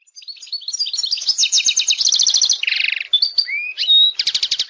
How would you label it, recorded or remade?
recorded